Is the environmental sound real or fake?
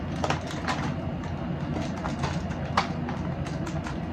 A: real